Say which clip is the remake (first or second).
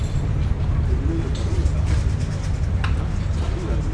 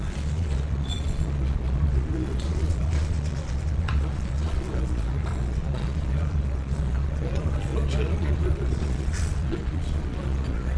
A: second